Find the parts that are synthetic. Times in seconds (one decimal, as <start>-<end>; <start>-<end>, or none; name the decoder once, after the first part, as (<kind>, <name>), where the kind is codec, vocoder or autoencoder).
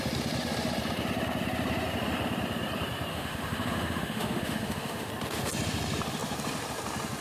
3.1-5.1 (autoencoder, DAC-VAE)